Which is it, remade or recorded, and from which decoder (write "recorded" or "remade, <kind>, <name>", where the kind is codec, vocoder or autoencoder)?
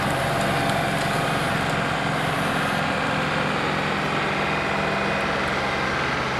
recorded